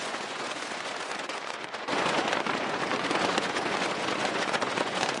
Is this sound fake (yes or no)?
yes